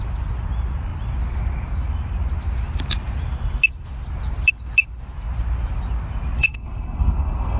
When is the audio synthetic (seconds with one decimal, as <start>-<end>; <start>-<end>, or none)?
6.4-7.6